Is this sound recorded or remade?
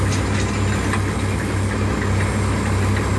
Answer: recorded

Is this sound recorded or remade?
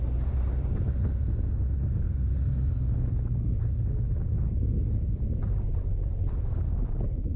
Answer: recorded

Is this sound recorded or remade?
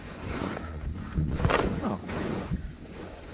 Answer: remade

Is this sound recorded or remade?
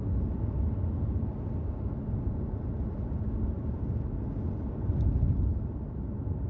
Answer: recorded